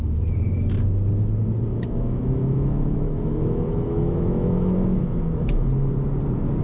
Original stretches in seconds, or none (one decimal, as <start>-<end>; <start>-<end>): 0.0-1.7; 5.7-6.6